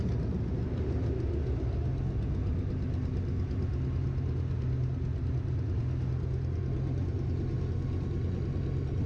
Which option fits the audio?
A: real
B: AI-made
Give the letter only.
A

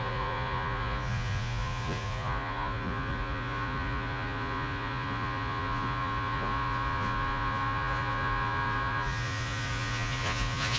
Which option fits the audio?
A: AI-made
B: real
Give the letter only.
A